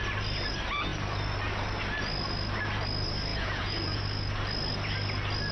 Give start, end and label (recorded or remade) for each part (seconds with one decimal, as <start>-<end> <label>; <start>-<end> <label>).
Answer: 0.0-3.3 recorded; 3.3-4.0 remade; 4.0-5.5 recorded